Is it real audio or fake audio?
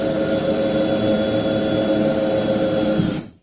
real